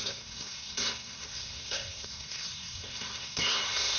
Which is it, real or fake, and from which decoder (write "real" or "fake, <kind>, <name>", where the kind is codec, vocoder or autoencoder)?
fake, codec, SNAC